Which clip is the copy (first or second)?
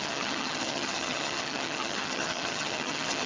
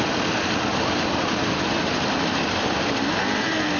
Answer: first